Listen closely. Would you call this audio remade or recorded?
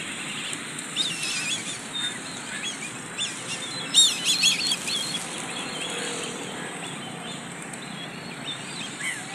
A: recorded